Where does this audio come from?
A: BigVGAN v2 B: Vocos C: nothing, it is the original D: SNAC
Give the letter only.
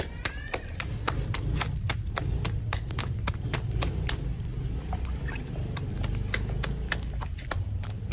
C